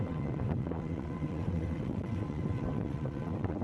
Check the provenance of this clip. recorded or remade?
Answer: remade